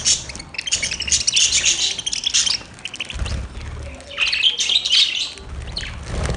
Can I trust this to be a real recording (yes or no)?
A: yes